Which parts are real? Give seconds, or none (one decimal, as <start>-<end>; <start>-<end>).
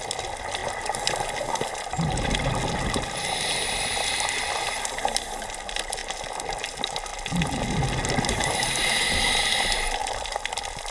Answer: 0.0-10.9